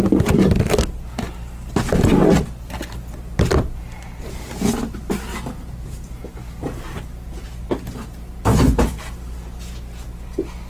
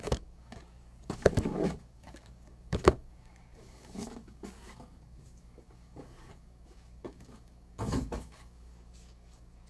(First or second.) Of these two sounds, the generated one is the second